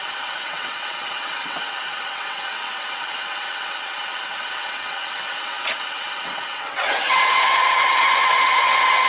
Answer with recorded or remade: remade